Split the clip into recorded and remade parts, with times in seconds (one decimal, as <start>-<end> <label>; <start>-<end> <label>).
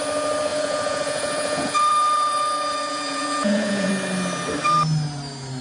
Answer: 0.0-0.5 recorded; 0.5-3.9 remade; 3.9-5.6 recorded